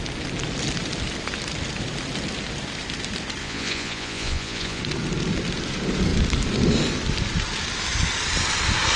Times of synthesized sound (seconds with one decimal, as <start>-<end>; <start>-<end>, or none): 3.4-4.8